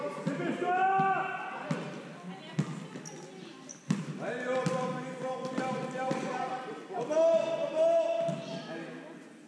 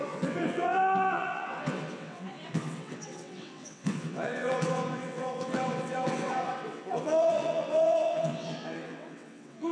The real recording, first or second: first